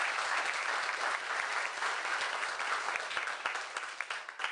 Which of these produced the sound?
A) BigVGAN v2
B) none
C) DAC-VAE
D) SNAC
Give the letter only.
B